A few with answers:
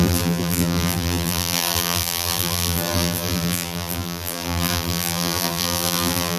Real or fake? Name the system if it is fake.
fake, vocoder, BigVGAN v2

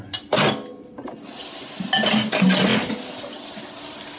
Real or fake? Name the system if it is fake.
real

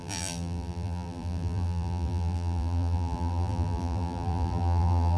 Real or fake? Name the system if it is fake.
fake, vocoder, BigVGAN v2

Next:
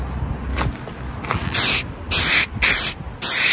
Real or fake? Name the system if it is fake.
real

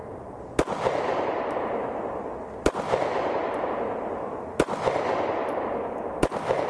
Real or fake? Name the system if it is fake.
real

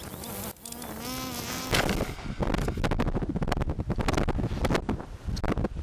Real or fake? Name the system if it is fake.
real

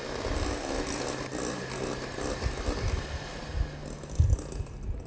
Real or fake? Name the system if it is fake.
real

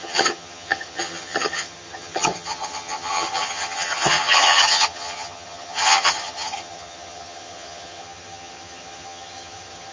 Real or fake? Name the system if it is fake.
fake, vocoder, HiFi-GAN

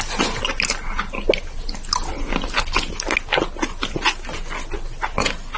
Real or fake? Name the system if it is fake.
real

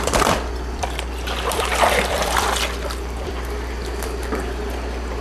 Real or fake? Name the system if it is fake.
fake, vocoder, BigVGAN v2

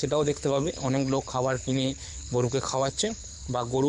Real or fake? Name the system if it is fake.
fake, codec, HILCodec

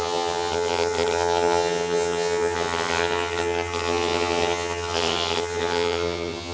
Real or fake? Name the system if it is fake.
fake, vocoder, HiFi-GAN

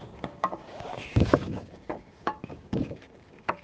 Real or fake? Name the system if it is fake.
fake, codec, DAC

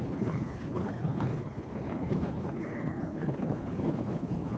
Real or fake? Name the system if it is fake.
fake, codec, HILCodec